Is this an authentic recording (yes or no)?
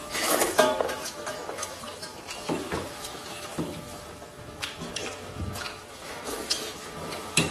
no